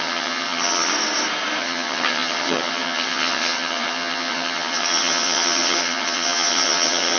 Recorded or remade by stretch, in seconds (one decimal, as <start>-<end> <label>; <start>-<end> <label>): 0.0-0.9 remade; 0.9-1.6 recorded; 1.6-7.2 remade